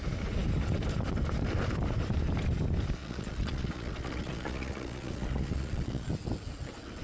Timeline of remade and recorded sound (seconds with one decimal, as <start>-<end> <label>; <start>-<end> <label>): 0.0-3.0 recorded; 3.0-6.1 remade; 6.1-7.0 recorded